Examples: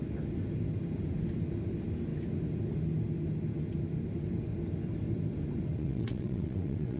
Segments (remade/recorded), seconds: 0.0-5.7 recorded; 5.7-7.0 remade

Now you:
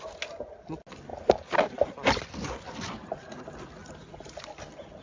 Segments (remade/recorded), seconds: 0.0-5.0 recorded

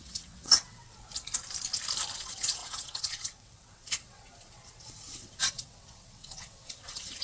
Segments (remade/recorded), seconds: 0.0-1.0 remade; 1.0-2.1 recorded; 2.1-7.2 remade

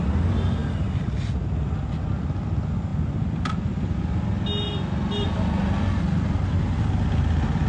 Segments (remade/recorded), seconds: 0.0-7.7 recorded